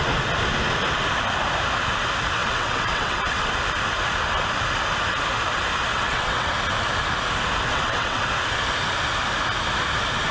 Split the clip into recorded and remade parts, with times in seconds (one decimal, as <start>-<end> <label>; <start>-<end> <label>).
0.0-2.4 recorded; 2.4-3.5 remade; 3.5-5.9 recorded; 5.9-6.5 remade; 6.5-7.7 recorded; 7.7-8.2 remade; 8.2-10.3 recorded